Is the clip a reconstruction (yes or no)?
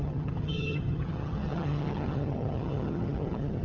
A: yes